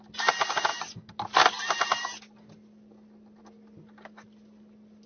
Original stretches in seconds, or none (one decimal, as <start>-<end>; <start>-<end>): 0.0-5.1

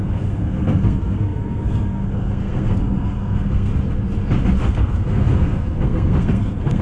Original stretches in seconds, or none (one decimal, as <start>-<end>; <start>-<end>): 3.7-4.6

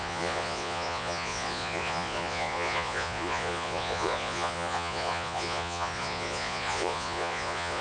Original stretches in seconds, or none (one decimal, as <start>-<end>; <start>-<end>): none